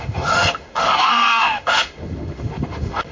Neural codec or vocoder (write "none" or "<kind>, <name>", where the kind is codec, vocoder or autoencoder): autoencoder, DAC-VAE